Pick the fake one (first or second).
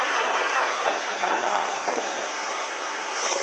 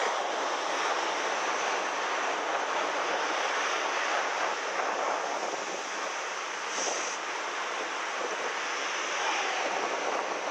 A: first